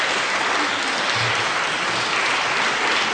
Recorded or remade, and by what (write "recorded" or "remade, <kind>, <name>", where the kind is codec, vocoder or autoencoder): recorded